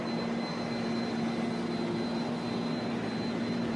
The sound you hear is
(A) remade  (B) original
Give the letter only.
B